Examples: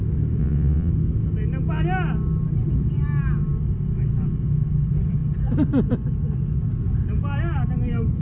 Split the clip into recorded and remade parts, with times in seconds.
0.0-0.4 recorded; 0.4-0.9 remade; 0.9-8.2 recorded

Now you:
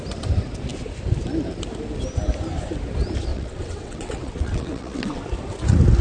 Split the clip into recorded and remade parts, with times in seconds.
0.0-3.3 recorded; 3.3-5.2 remade; 5.2-6.0 recorded

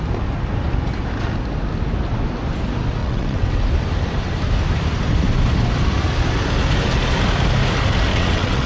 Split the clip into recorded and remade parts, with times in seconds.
0.0-3.0 recorded; 3.0-3.6 remade; 3.6-8.1 recorded; 8.1-8.7 remade

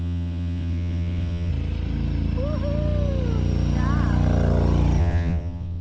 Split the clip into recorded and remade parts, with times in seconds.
0.0-1.5 remade; 1.5-5.0 recorded; 5.0-5.8 remade

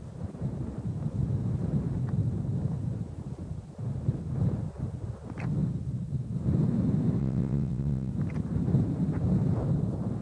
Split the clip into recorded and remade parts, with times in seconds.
0.0-7.2 recorded; 7.2-8.1 remade; 8.1-10.2 recorded

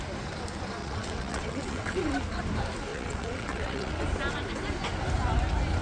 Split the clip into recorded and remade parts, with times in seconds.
0.0-0.8 recorded; 0.8-2.0 remade; 2.0-2.9 recorded; 2.9-4.0 remade; 4.0-5.8 recorded

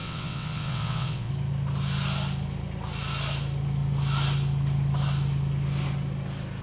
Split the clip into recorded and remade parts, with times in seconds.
0.0-1.3 remade; 1.3-6.6 recorded